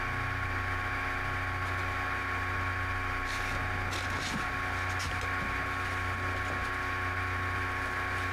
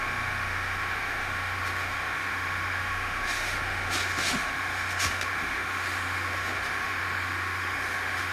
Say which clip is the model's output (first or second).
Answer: second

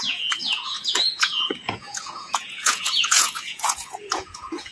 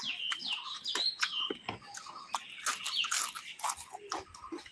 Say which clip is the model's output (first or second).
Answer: first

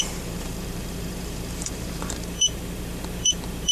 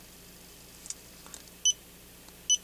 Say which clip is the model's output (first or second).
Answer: first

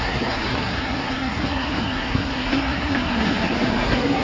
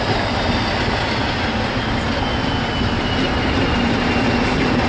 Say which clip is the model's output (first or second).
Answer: first